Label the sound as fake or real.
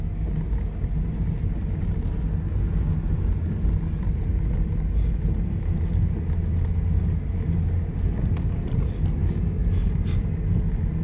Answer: real